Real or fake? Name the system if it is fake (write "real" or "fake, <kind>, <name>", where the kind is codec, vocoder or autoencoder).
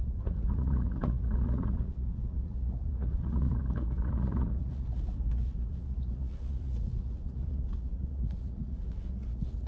fake, vocoder, Vocos